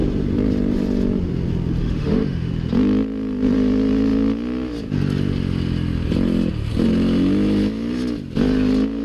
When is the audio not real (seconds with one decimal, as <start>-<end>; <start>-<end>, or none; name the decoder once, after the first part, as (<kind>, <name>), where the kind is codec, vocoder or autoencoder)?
1.8-2.5 (autoencoder, DAC-VAE)